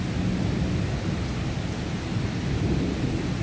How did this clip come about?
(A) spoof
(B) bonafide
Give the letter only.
B